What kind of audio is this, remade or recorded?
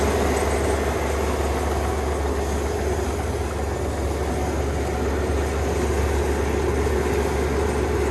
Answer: recorded